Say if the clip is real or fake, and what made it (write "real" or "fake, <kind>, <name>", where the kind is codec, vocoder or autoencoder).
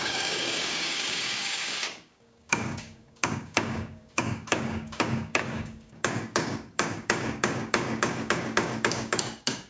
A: fake, codec, DAC